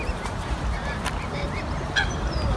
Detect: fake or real real